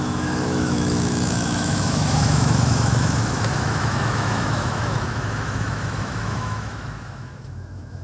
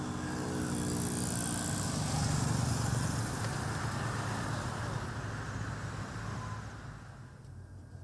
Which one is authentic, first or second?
second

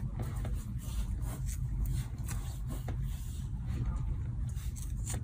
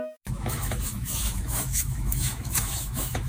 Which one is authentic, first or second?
first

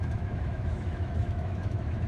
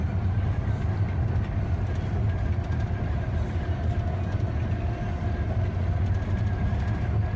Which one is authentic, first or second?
second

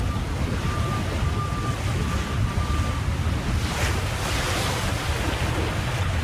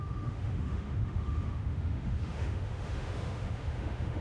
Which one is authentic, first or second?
first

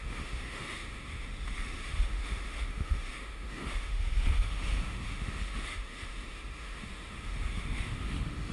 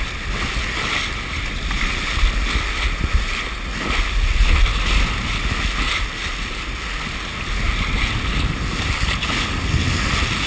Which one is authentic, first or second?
second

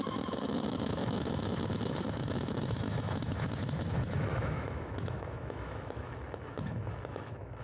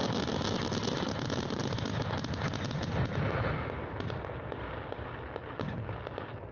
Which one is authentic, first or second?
second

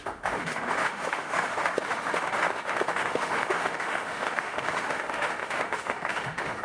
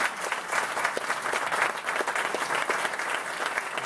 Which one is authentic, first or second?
second